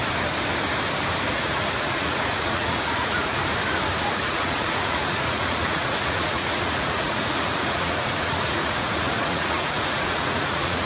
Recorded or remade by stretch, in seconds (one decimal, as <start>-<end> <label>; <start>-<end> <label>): 0.0-1.3 recorded; 1.3-3.4 remade; 3.4-4.0 recorded; 4.0-10.9 remade